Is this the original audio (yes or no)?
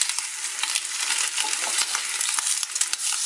yes